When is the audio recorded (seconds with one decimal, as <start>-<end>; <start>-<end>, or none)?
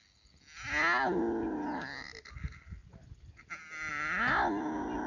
0.0-5.1